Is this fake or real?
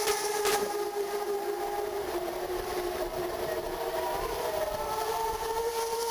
fake